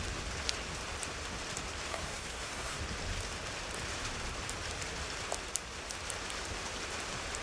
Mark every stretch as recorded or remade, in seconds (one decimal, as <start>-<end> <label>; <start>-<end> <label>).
0.0-1.9 recorded; 1.9-2.8 remade; 2.8-7.4 recorded